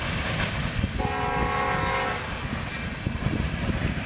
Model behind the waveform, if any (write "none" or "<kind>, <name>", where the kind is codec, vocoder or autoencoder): none